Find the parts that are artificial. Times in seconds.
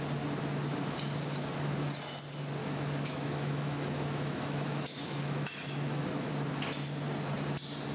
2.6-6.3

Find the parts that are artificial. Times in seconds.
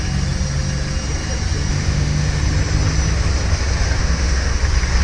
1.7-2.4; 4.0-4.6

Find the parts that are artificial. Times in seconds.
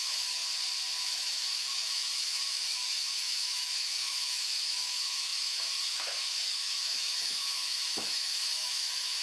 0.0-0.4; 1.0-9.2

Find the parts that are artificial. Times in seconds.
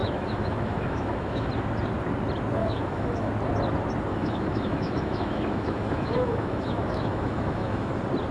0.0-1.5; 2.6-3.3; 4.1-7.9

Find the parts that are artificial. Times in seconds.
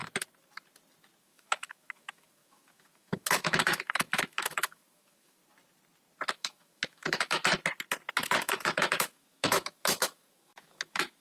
1.2-5.4; 6.3-7.4; 8.4-11.2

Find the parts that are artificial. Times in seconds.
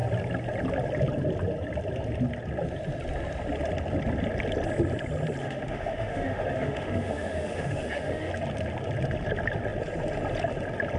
5.4-8.3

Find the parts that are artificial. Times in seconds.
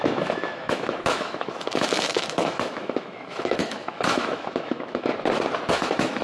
0.0-5.1; 5.7-6.2